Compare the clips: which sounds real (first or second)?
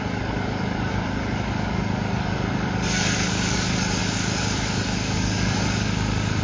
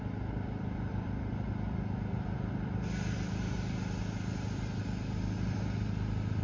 second